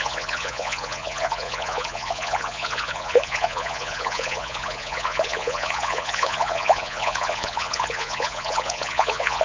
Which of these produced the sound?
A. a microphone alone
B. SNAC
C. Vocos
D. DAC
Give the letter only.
C